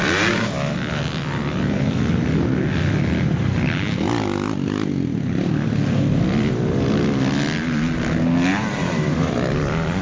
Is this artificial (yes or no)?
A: no